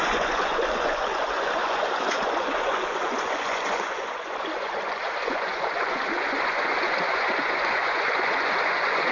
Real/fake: fake